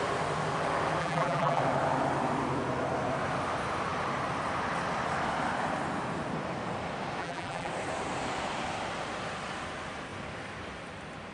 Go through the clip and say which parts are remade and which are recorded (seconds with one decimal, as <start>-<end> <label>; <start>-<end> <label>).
0.0-1.0 recorded; 1.0-1.6 remade; 1.6-7.2 recorded; 7.2-7.7 remade; 7.7-11.3 recorded